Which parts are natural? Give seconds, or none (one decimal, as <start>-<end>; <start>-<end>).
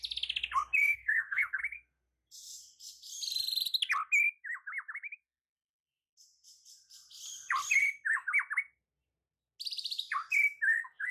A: 0.0-0.8; 1.6-11.1